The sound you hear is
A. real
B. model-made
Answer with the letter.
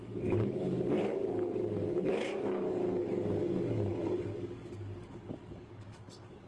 B